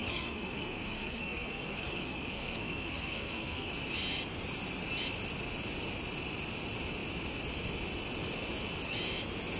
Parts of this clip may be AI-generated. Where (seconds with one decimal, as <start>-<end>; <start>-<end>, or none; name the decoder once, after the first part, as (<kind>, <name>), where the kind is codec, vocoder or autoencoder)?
0.0-3.7 (codec, SNAC)